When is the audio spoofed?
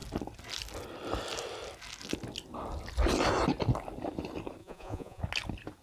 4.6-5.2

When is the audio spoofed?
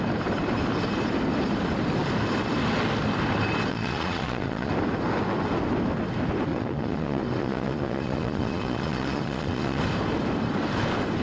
3.7-4.7; 6.5-9.8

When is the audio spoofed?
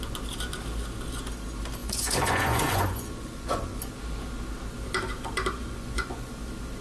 1.8-3.8; 5.6-6.3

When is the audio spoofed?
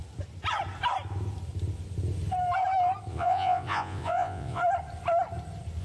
3.1-4.6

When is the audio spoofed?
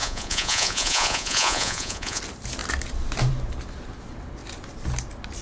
0.0-2.2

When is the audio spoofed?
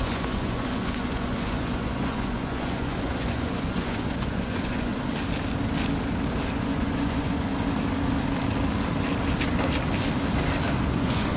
0.0-4.9; 6.6-7.5; 10.9-11.4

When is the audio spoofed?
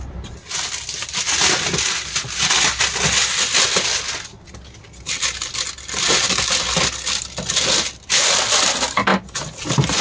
none